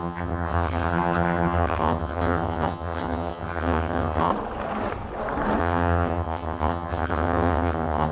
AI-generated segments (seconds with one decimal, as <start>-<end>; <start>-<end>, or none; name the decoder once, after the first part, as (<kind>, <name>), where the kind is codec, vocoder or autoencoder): 0.0-4.3 (vocoder, HiFi-GAN); 5.6-8.1